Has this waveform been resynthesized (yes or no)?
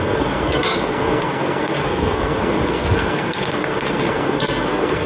yes